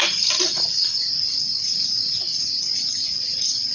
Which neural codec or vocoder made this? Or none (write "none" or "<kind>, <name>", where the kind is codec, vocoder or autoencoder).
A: vocoder, Vocos